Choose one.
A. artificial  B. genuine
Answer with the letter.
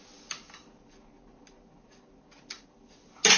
B